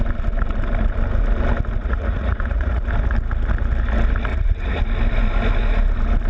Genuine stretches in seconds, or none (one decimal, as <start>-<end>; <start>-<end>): 0.0-1.8; 2.8-4.3; 4.8-6.3